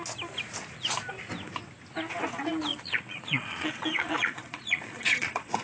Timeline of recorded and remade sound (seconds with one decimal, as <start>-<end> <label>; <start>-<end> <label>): 0.0-2.7 recorded; 2.7-5.6 remade